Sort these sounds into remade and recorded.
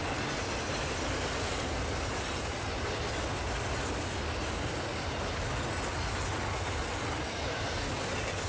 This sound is recorded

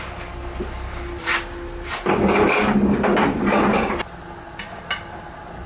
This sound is recorded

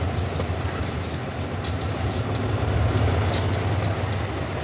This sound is recorded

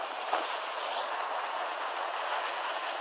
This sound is remade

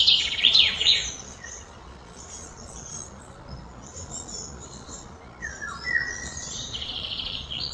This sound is remade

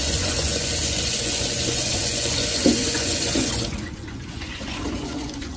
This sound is remade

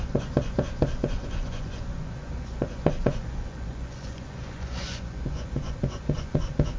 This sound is remade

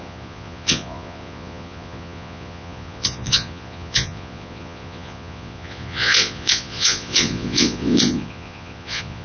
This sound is remade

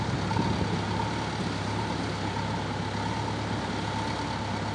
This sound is recorded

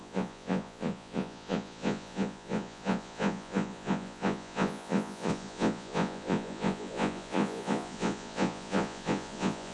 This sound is remade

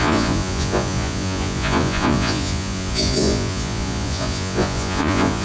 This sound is remade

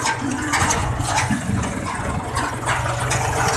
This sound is remade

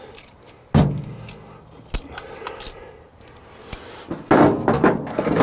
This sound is recorded